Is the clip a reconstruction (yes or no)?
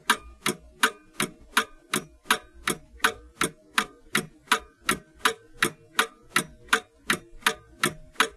no